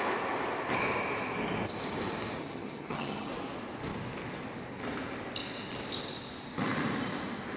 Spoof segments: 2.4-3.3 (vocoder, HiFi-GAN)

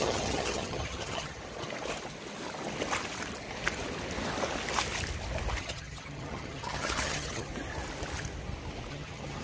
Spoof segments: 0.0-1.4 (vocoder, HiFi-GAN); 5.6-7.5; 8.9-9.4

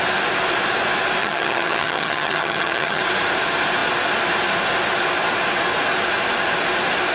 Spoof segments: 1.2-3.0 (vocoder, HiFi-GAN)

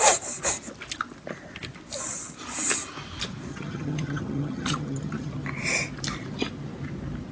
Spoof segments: 3.5-5.3 (vocoder, HiFi-GAN)

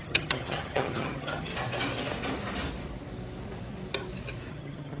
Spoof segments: 0.0-1.5 (vocoder, HiFi-GAN); 4.5-5.0

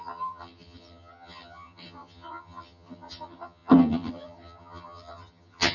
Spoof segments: 0.0-5.7 (vocoder, HiFi-GAN)

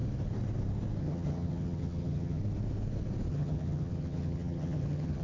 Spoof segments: 1.0-2.4 (vocoder, HiFi-GAN); 3.3-5.2